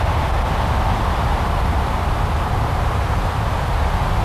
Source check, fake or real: real